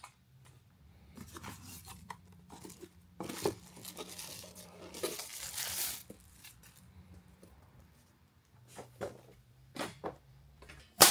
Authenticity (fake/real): fake